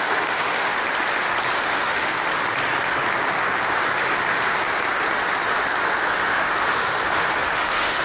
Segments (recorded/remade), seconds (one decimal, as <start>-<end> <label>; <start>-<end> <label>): 0.0-0.7 remade; 0.7-1.6 recorded; 1.6-2.1 remade; 2.1-6.2 recorded; 6.2-8.0 remade